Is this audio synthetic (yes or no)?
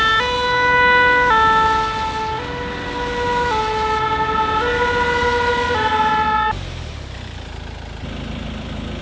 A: no